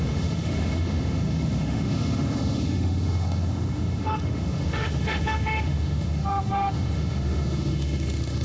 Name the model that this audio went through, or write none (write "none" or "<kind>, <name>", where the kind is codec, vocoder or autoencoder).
autoencoder, DAC-VAE